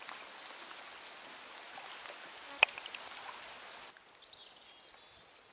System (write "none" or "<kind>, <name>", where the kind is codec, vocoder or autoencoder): none